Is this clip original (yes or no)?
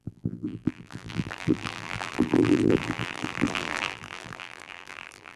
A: no